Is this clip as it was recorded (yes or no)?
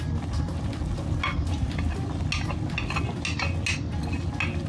yes